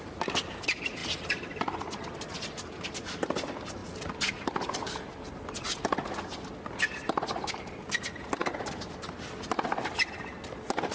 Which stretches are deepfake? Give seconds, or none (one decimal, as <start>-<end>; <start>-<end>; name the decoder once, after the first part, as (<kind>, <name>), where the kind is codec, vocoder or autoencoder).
none